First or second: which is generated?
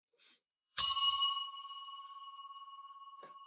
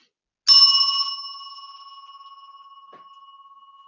first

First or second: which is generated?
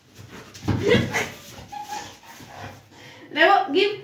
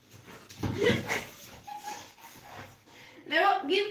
second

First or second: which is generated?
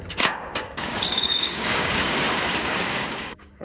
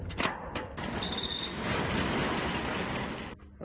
first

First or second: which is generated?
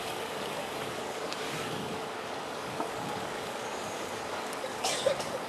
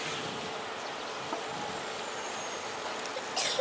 first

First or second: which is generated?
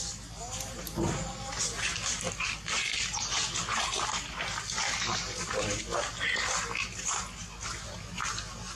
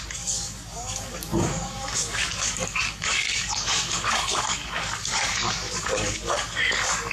second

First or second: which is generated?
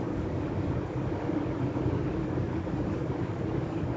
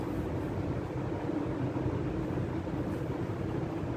first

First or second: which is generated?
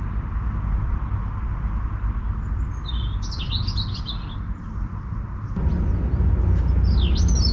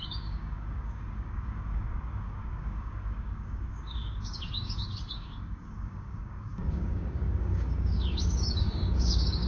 second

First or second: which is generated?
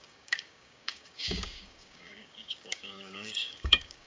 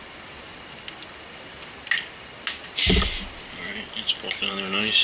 first